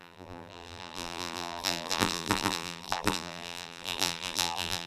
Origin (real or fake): fake